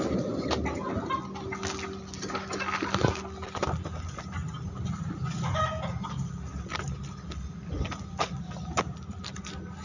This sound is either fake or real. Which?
real